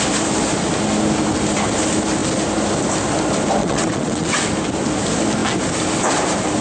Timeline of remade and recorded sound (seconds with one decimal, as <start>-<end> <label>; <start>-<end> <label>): 0.0-3.6 recorded; 3.6-4.4 remade; 4.4-6.6 recorded